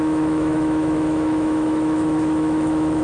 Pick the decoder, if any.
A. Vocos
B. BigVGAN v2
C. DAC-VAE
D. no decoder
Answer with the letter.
C